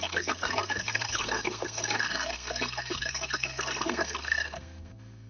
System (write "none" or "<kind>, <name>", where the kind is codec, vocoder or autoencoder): codec, SNAC